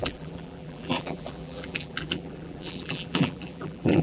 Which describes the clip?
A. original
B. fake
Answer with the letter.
B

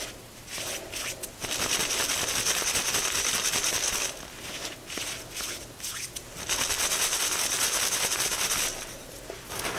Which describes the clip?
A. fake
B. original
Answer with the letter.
B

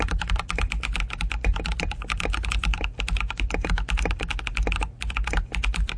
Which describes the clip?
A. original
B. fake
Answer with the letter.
A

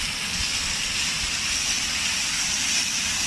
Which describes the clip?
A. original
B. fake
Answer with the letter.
A